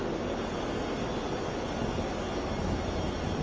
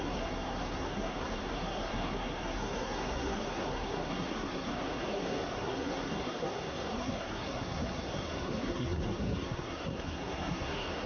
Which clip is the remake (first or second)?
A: second